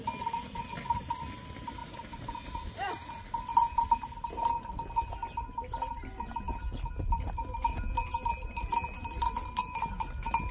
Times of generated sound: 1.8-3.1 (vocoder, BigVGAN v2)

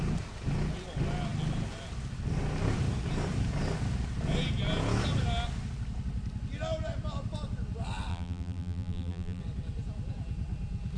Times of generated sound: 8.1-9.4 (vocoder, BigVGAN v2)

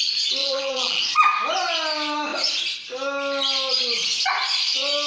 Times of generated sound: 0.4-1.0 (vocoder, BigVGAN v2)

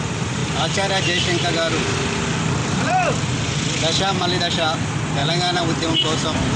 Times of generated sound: 0.4-1.5 (vocoder, BigVGAN v2); 2.6-4.4; 5.2-6.0